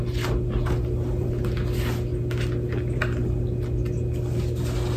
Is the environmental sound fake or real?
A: real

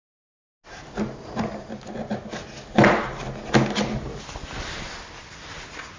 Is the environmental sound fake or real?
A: real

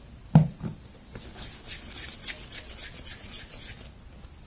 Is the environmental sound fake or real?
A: real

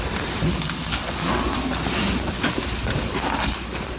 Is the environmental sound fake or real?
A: real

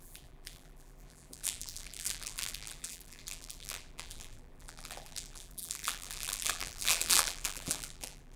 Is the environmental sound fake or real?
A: fake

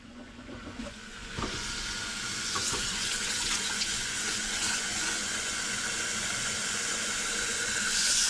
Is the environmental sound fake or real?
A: fake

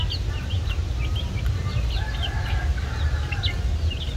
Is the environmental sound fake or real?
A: real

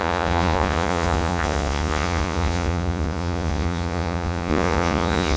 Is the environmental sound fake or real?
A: fake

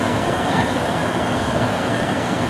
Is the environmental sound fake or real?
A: fake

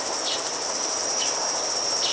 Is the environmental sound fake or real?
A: fake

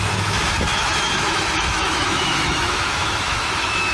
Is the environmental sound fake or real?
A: fake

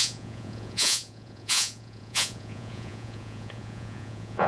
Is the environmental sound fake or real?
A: fake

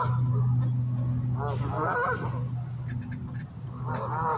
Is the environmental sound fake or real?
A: real